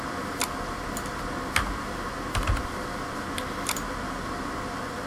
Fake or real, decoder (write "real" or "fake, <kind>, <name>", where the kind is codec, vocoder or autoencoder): real